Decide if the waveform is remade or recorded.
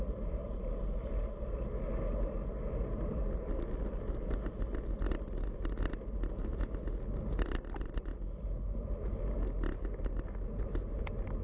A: recorded